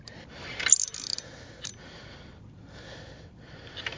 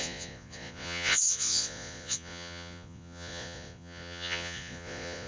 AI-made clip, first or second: second